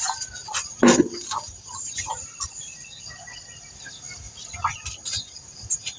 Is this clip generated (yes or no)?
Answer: no